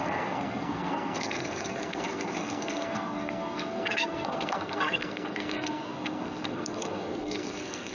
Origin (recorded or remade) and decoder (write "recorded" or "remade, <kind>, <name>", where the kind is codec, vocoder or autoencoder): remade, codec, SNAC